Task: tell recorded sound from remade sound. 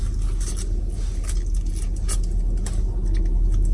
recorded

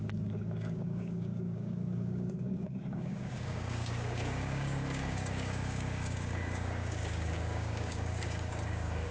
remade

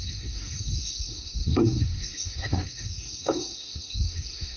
remade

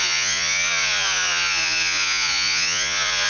remade